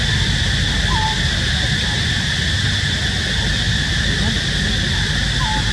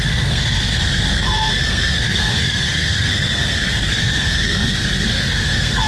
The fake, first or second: second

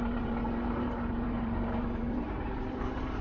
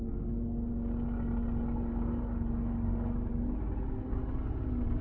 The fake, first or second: first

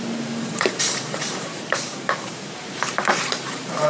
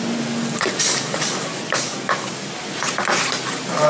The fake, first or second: first